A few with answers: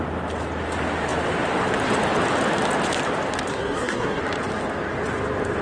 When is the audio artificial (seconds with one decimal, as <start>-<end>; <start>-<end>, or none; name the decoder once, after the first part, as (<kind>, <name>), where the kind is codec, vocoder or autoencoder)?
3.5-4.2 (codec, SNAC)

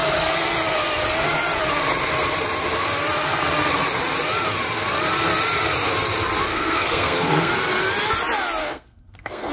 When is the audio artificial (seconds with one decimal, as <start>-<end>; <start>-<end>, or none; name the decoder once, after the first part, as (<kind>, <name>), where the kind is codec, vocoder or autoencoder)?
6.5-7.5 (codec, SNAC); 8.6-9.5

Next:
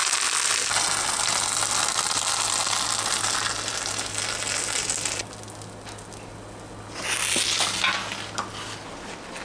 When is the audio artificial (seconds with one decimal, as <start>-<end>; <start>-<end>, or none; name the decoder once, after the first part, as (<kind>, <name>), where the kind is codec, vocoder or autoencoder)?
none

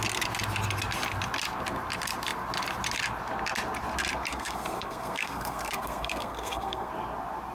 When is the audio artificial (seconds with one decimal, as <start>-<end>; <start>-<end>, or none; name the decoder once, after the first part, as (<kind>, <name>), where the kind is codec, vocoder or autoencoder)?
4.3-6.9 (codec, SNAC)